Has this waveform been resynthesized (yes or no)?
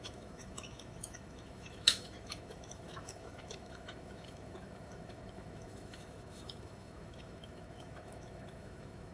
yes